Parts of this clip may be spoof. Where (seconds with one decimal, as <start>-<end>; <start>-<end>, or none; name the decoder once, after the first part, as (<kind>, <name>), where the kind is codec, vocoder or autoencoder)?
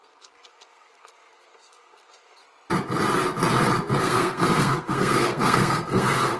0.0-2.4 (codec, SNAC); 4.0-6.4